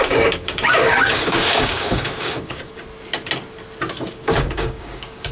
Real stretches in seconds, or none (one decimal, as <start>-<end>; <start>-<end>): 2.8-4.1